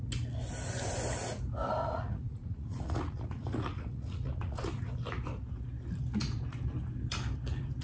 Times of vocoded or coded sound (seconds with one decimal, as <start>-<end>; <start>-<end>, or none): 1.8-4.9